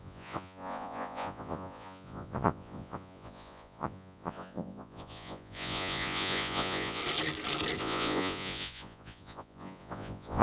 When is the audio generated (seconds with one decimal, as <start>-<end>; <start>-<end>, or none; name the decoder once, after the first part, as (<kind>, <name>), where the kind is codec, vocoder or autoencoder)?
0.0-7.0 (vocoder, Vocos); 7.8-10.4